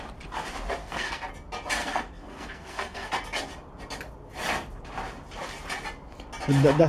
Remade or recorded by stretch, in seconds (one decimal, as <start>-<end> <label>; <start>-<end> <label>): 0.0-0.8 recorded; 0.8-1.3 remade; 1.3-1.8 recorded; 1.8-3.1 remade; 3.1-6.9 recorded